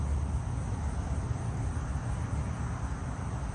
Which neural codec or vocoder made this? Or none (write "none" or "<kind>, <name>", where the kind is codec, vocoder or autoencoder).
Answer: none